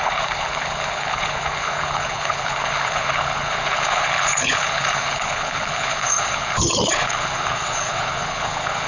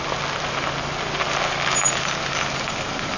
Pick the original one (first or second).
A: second